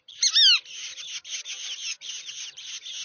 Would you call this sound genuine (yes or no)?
yes